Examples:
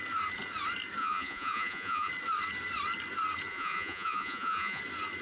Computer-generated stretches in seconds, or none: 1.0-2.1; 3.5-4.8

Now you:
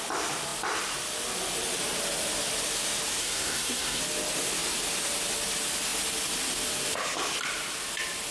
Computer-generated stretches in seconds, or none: 3.2-4.0